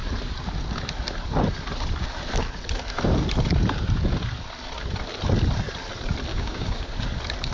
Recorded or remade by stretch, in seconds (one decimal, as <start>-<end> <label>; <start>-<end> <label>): 0.0-6.3 recorded; 6.3-6.9 remade; 6.9-7.5 recorded